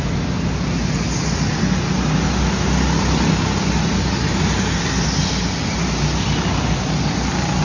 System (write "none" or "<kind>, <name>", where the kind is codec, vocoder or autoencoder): none